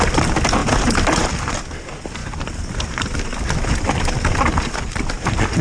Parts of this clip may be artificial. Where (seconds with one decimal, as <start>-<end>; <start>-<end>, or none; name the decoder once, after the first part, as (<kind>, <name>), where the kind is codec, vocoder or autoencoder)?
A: 0.6-1.5 (vocoder, BigVGAN v2); 2.2-5.6